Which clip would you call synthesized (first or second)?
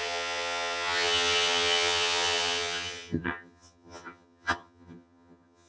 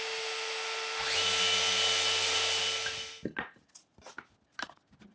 first